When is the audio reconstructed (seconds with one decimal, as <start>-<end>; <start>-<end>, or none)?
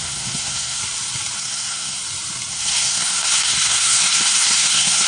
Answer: 0.0-0.8; 1.4-2.0; 2.5-5.1